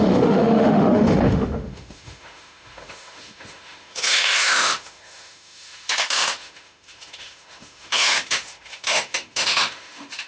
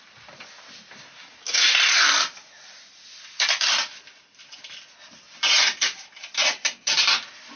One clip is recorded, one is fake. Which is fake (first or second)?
first